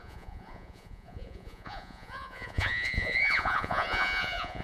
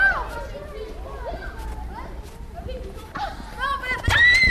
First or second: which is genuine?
second